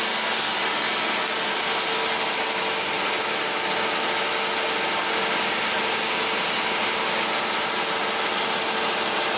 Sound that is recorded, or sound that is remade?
recorded